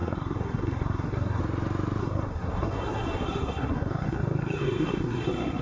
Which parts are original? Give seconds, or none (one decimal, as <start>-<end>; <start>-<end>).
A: 1.4-2.0